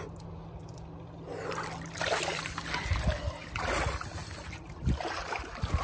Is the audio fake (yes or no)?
no